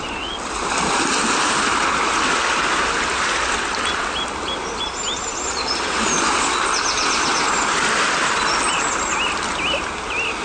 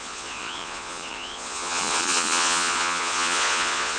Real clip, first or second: first